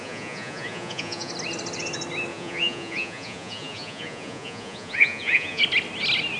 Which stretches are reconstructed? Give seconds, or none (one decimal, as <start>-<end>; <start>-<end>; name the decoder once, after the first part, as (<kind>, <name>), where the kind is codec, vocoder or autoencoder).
0.0-1.3 (vocoder, Vocos); 2.3-5.6